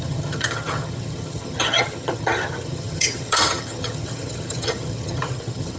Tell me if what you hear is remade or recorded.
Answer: remade